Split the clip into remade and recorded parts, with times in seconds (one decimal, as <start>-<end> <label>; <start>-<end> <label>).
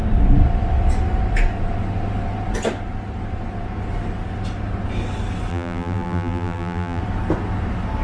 0.0-5.5 recorded; 5.5-7.0 remade; 7.0-8.0 recorded